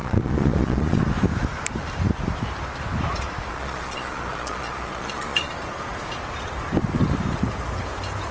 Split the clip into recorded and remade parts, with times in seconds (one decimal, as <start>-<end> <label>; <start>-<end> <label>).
0.0-1.0 remade; 1.0-3.5 recorded; 3.5-5.5 remade; 5.5-8.3 recorded

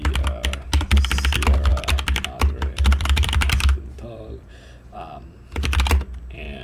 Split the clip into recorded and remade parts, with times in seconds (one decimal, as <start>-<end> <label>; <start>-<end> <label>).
0.0-1.7 recorded; 1.7-4.5 remade; 4.5-6.6 recorded